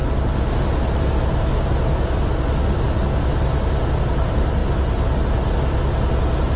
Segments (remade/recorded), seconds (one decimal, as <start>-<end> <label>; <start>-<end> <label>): 0.0-4.0 recorded; 4.0-4.6 remade; 4.6-6.6 recorded